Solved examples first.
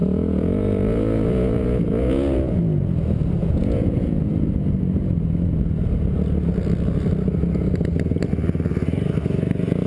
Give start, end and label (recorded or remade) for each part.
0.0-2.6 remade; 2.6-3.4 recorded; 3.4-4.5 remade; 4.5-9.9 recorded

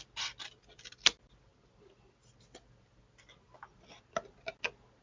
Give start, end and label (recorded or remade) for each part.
0.0-5.0 recorded

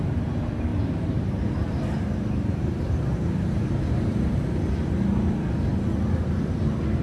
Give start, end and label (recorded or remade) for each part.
0.0-0.7 recorded; 0.7-4.3 remade; 4.3-7.0 recorded

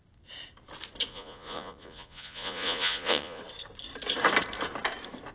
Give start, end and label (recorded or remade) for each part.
0.0-1.1 recorded; 1.1-3.4 remade; 3.4-5.3 recorded

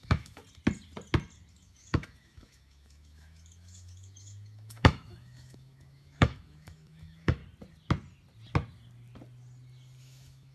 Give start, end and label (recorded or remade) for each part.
0.0-0.4 remade; 0.4-1.5 recorded; 1.5-7.4 remade; 7.4-10.0 recorded; 10.0-10.5 remade